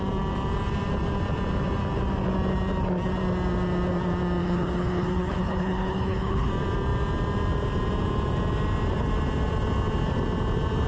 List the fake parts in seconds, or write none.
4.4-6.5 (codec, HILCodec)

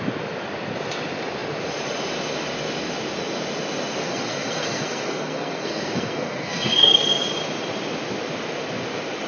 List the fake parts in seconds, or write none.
4.0-7.4 (codec, SNAC)

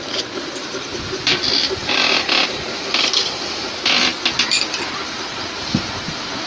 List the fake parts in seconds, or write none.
none

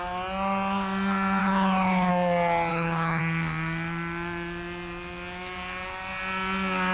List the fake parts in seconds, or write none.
1.4-2.1 (codec, HILCodec); 2.7-3.2

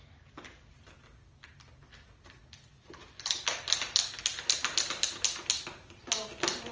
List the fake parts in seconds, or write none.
none

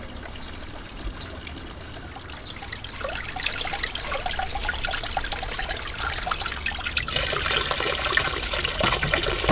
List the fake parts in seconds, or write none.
4.6-5.1 (vocoder, BigVGAN v2)